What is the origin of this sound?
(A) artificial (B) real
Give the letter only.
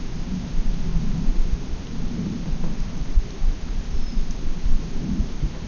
A